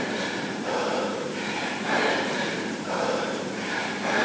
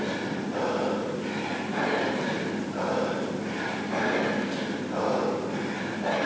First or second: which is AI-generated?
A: first